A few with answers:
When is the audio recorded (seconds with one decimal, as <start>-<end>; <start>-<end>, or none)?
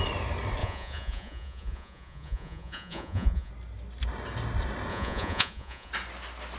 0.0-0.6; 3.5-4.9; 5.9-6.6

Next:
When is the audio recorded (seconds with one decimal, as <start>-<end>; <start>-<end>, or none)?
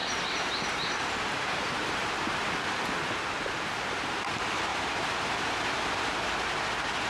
2.5-4.7; 5.8-7.1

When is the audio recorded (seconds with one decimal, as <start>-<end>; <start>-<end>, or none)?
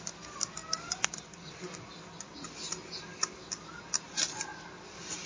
0.0-0.6; 2.3-3.1; 3.7-4.5